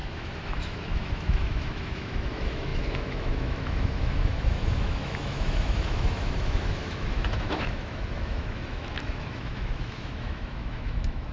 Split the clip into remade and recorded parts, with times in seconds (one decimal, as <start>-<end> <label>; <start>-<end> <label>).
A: 0.0-11.3 remade